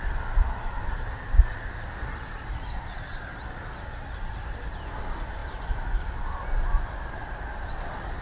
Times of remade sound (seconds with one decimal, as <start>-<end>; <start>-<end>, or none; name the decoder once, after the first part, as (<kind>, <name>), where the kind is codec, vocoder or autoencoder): none